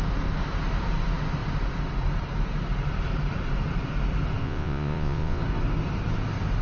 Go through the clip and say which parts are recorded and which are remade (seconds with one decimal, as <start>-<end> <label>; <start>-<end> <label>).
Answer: 0.0-4.4 recorded; 4.4-5.4 remade; 5.4-6.6 recorded